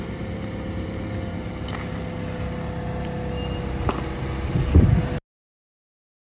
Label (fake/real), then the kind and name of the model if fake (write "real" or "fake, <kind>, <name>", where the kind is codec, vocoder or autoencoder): real